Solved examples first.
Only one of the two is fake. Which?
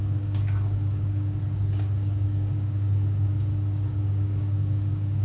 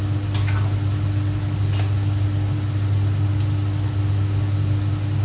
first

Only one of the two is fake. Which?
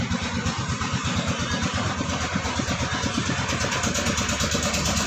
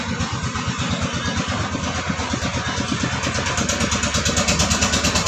first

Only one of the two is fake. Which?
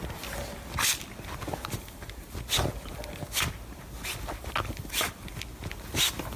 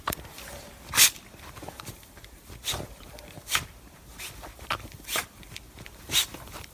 second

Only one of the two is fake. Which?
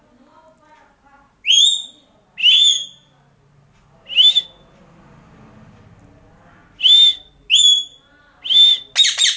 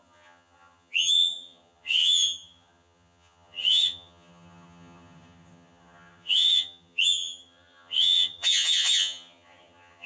second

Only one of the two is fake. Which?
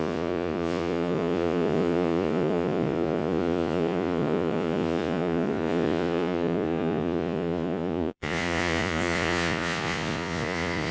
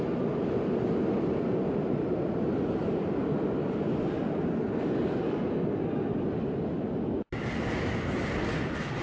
first